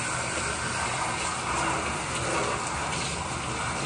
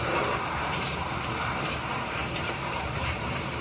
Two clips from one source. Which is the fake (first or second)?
second